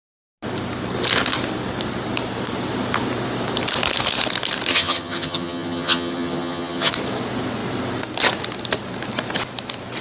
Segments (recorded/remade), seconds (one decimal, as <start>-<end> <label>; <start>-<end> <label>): 0.0-4.7 recorded; 4.7-6.9 remade; 6.9-10.0 recorded